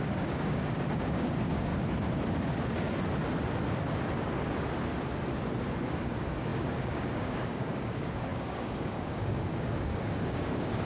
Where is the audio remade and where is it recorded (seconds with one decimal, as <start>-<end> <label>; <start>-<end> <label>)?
0.0-1.7 remade; 1.7-5.9 recorded; 5.9-10.9 remade